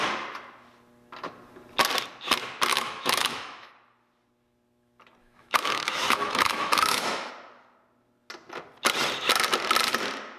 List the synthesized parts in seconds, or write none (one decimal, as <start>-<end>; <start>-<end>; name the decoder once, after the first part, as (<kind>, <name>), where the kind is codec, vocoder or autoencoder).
2.7-3.7 (autoencoder, DAC-VAE); 5.2-7.3